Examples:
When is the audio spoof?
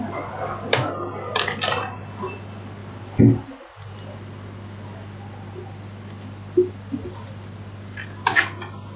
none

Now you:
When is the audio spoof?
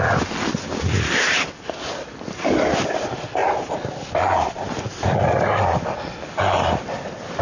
none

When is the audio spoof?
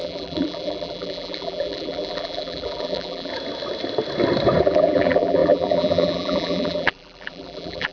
0.0-3.3 (vocoder, BigVGAN v2); 4.6-7.9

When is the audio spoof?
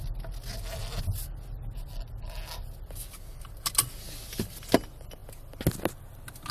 none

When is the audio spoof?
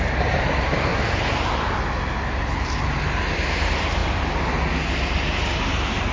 0.0-0.9 (vocoder, BigVGAN v2); 3.3-4.0; 5.6-6.1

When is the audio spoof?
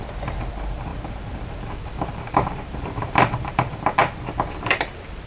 0.0-4.0 (vocoder, BigVGAN v2); 4.8-5.3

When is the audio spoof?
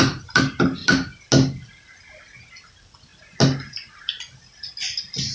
none